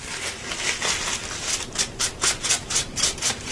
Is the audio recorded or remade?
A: recorded